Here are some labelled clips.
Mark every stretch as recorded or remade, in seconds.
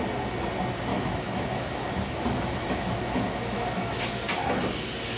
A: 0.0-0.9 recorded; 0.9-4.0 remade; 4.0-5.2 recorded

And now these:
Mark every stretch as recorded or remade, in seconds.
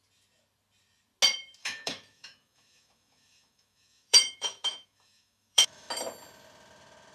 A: 0.0-1.6 recorded; 1.6-5.9 remade; 5.9-7.1 recorded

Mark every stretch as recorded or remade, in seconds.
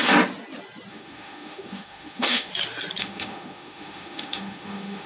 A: 0.0-0.9 recorded; 0.9-2.5 remade; 2.5-3.0 recorded; 3.0-5.1 remade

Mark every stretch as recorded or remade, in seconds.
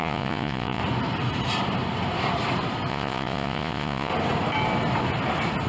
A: 0.0-0.8 remade; 0.8-2.9 recorded; 2.9-4.1 remade; 4.1-5.7 recorded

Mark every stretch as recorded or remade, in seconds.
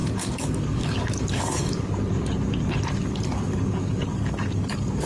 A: 0.0-1.9 remade; 1.9-3.0 recorded; 3.0-5.1 remade